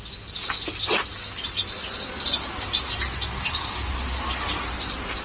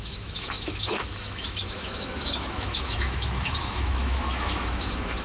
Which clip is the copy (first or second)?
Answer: second